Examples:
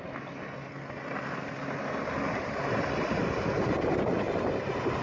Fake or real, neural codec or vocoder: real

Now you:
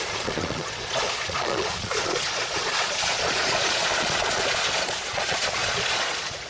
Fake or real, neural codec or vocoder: fake, vocoder, Vocos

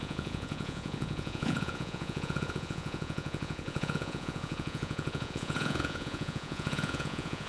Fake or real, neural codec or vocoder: fake, vocoder, Vocos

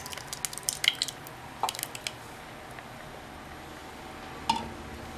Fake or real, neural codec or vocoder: real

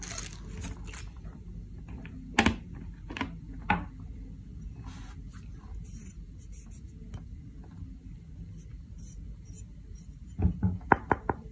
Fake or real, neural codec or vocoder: real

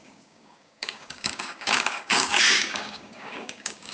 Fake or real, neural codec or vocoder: fake, codec, DAC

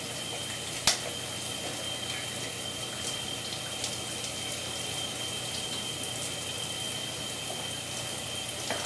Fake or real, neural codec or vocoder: real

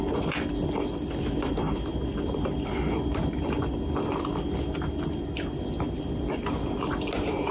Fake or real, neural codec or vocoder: real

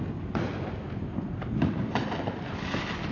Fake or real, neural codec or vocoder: real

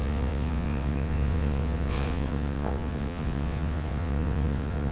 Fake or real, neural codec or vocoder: fake, vocoder, WaveNeXt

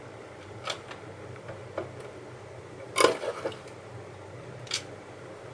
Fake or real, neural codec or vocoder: real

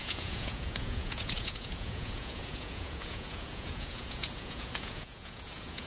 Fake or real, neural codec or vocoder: fake, vocoder, Vocos